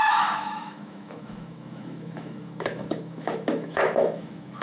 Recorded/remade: remade